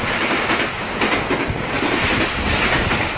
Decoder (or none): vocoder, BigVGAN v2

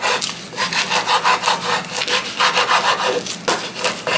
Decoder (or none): none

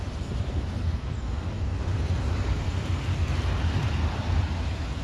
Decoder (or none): vocoder, BigVGAN v2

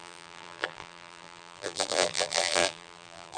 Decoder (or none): vocoder, BigVGAN v2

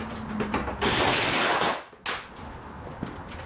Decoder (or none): none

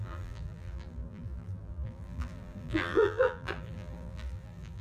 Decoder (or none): vocoder, BigVGAN v2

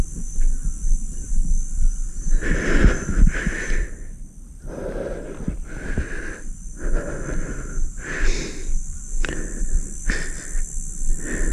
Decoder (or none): none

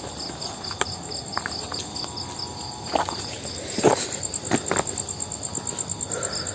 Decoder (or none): none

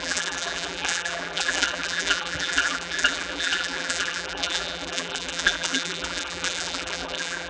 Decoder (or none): vocoder, BigVGAN v2